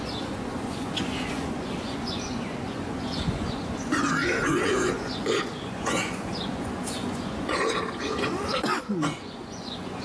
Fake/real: fake